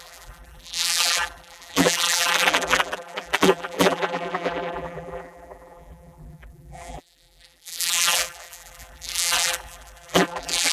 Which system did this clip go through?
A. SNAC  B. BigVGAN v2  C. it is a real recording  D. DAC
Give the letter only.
B